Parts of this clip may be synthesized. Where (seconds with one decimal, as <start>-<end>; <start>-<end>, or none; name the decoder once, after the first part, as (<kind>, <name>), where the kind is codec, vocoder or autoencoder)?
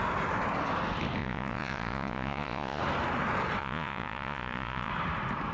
1.2-2.8 (vocoder, Vocos); 3.6-4.9